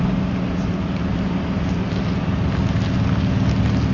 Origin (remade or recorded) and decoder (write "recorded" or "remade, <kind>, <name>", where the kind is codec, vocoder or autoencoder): recorded